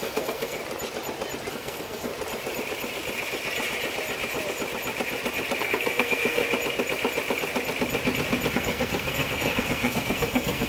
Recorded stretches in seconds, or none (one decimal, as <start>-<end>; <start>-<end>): 0.6-1.5; 2.1-5.6; 6.4-8.5